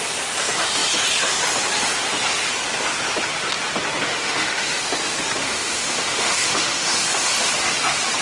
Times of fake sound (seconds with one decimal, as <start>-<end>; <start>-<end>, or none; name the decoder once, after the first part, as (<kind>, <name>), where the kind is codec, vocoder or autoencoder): 4.1-4.8 (autoencoder, DAC-VAE); 5.4-7.5